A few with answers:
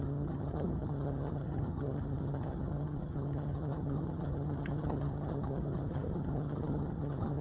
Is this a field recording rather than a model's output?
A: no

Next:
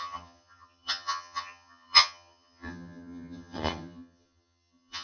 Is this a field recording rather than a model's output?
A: no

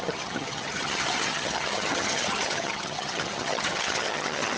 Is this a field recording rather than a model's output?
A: no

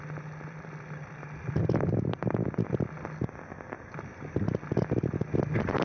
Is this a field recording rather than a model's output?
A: yes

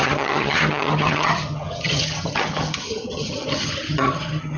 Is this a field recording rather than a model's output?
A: no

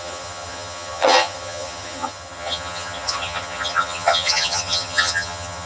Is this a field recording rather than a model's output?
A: no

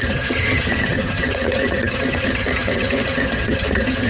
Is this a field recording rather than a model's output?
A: no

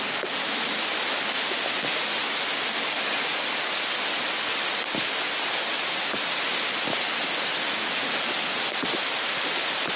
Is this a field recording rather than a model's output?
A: yes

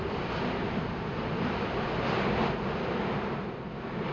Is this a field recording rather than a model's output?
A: yes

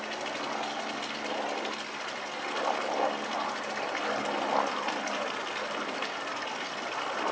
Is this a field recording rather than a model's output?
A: yes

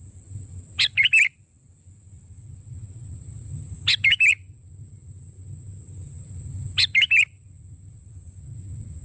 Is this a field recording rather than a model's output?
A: yes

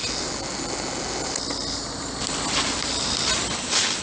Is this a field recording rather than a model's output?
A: yes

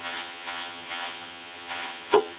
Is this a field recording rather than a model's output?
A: no